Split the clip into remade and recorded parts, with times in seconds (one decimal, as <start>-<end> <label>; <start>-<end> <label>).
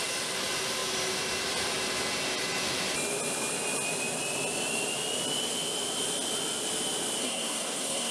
0.0-7.2 recorded; 7.2-8.1 remade